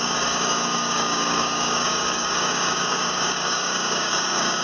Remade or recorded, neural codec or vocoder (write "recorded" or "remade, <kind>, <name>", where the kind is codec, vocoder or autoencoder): remade, codec, DAC